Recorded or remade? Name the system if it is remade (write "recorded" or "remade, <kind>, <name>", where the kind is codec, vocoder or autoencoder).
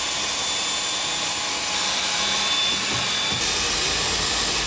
recorded